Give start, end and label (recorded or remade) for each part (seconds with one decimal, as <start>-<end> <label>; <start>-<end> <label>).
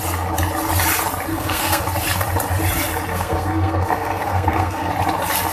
0.0-1.3 recorded; 1.3-1.8 remade; 1.8-3.1 recorded; 3.1-4.9 remade; 4.9-5.5 recorded